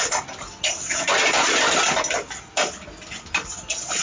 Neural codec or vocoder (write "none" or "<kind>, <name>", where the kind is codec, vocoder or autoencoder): none